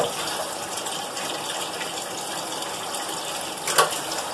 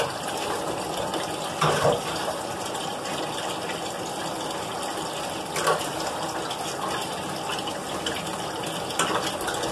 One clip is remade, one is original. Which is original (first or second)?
first